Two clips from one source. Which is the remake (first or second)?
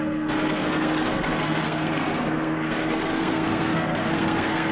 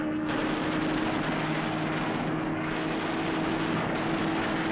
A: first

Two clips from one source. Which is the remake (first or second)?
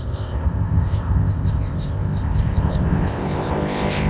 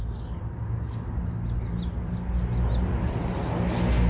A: first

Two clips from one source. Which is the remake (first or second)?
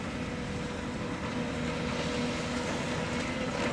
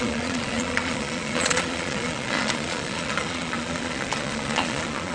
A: second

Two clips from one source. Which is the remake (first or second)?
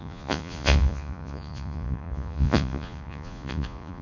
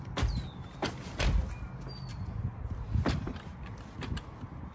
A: first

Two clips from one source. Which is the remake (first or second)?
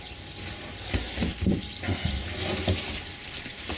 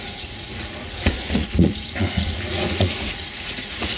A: second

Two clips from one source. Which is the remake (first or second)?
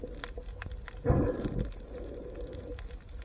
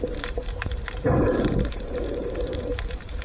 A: second